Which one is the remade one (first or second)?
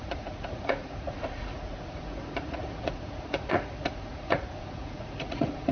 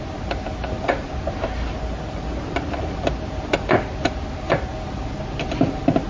first